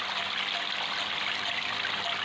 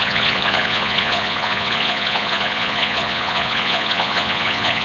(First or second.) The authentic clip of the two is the first